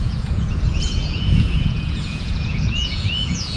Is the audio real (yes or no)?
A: no